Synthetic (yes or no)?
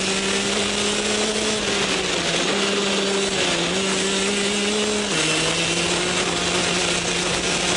no